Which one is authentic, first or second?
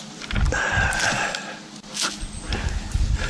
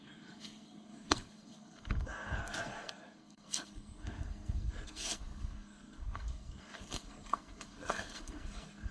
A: first